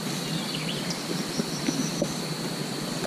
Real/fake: real